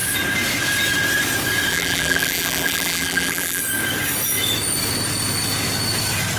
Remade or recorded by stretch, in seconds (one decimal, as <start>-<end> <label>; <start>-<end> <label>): 0.0-1.7 recorded; 1.7-3.6 remade; 3.6-6.4 recorded